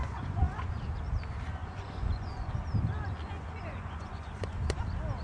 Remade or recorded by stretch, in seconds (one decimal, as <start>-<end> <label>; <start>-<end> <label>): 0.0-0.7 remade; 0.7-1.6 recorded; 1.6-2.5 remade; 2.5-3.3 recorded; 3.3-4.8 remade; 4.8-5.2 recorded